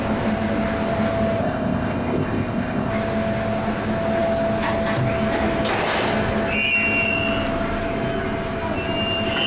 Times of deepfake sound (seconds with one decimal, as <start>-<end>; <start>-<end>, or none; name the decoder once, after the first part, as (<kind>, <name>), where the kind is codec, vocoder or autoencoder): 1.4-2.9 (codec, ZipCodec)